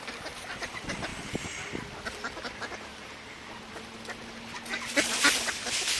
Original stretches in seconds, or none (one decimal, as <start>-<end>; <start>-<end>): 1.1-4.7